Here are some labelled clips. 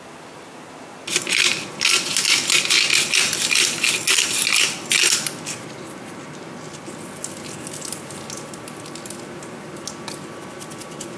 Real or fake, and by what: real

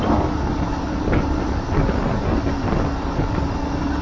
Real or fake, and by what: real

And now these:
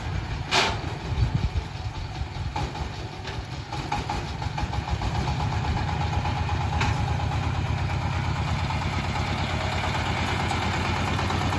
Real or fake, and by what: real